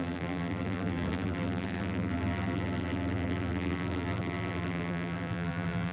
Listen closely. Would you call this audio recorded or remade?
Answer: remade